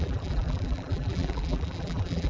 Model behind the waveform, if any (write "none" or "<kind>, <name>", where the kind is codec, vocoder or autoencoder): vocoder, BigVGAN v2